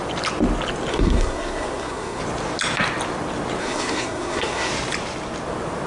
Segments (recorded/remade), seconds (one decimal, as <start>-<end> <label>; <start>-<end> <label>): 0.0-0.9 recorded; 0.9-2.2 remade; 2.2-3.6 recorded; 3.6-4.7 remade; 4.7-5.9 recorded